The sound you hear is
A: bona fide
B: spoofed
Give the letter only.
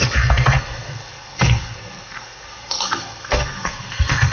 B